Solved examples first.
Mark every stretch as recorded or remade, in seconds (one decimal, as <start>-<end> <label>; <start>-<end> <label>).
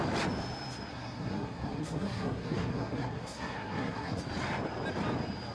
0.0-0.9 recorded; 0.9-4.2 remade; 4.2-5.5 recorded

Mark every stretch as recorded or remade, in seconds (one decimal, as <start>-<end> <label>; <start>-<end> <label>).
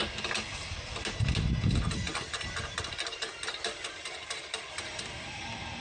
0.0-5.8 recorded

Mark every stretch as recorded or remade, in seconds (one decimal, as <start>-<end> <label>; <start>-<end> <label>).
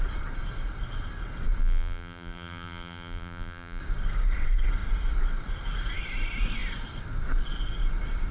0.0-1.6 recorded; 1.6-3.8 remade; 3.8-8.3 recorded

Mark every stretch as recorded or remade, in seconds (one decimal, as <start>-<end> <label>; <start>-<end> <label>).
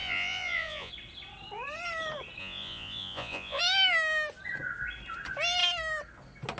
0.0-0.9 remade; 0.9-2.4 recorded; 2.4-3.6 remade; 3.6-6.6 recorded